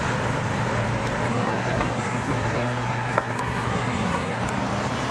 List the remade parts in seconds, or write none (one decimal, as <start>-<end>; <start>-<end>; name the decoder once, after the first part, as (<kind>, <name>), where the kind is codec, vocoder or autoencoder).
1.3-4.4 (codec, SNAC)